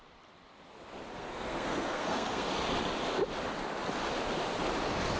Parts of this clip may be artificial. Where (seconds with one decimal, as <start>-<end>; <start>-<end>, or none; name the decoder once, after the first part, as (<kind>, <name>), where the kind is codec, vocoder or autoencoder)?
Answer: 1.1-2.5 (codec, SNAC)